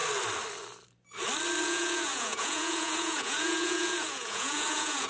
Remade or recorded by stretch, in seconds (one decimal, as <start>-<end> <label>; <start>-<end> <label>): 0.0-1.6 recorded; 1.6-5.1 remade